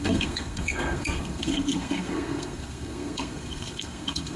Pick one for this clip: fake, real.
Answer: fake